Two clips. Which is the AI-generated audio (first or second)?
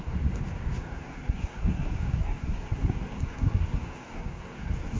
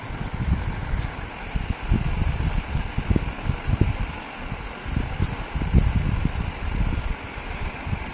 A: first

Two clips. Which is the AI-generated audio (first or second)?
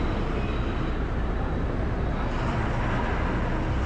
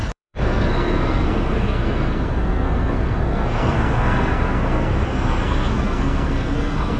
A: second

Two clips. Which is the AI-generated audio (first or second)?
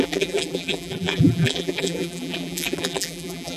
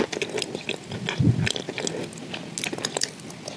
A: first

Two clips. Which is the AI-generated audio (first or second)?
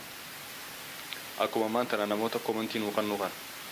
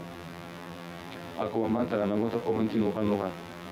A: second